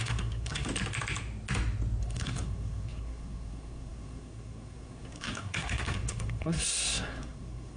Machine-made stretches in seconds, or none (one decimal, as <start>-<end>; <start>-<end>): 0.0-0.7; 2.0-7.8